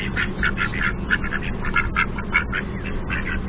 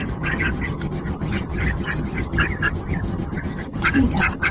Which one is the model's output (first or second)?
second